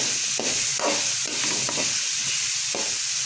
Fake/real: real